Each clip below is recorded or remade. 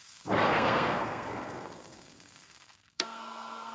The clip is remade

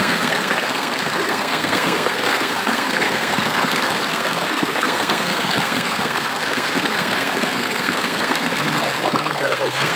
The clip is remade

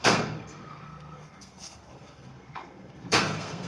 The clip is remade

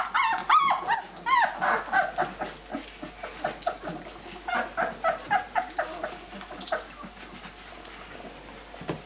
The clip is recorded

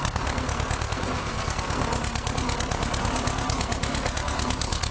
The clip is remade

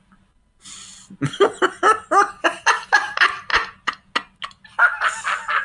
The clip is recorded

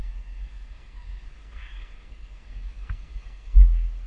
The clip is remade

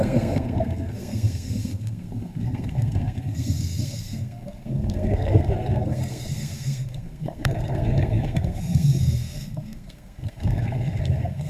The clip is remade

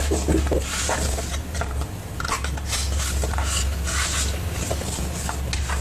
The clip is recorded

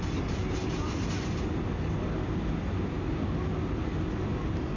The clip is recorded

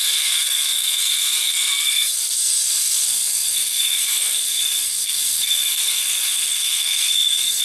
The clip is remade